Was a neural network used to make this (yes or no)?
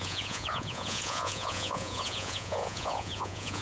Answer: yes